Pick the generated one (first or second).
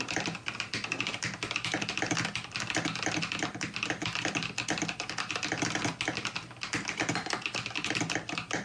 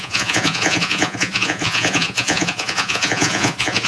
second